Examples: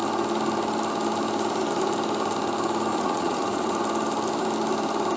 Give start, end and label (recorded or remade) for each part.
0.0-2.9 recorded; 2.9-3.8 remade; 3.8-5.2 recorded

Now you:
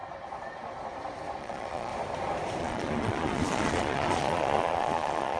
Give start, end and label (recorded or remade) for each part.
0.0-1.4 recorded; 1.4-1.9 remade; 1.9-2.6 recorded; 2.6-5.4 remade

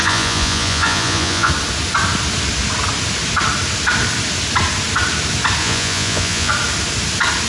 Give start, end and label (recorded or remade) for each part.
0.0-1.5 remade; 1.5-5.6 recorded; 5.6-6.5 remade; 6.5-7.5 recorded

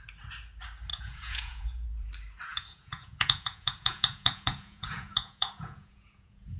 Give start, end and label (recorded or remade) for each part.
0.0-0.9 recorded; 0.9-2.1 remade; 2.1-2.5 recorded; 2.5-6.6 remade

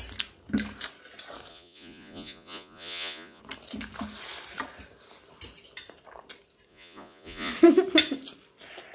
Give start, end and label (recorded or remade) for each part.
0.0-1.5 recorded; 1.5-3.4 remade; 3.4-6.7 recorded; 6.7-7.5 remade; 7.5-8.9 recorded